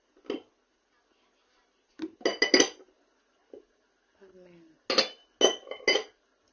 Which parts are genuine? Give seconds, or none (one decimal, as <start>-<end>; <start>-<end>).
0.0-6.5